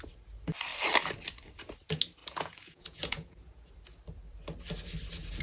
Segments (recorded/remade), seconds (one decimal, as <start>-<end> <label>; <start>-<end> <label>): 0.0-2.2 recorded; 2.2-3.7 remade; 3.7-5.4 recorded